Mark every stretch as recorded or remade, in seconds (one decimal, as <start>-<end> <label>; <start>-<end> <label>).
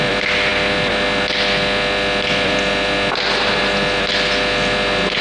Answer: 0.0-5.2 recorded